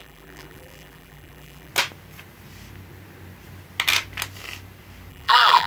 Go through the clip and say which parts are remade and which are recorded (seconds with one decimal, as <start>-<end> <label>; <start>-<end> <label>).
0.0-1.7 remade; 1.7-5.1 recorded; 5.1-5.7 remade